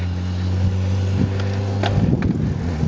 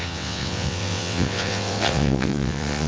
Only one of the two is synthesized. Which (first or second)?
second